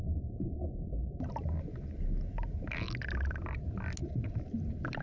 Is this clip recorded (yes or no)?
yes